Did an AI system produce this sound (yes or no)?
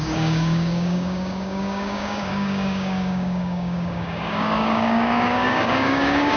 yes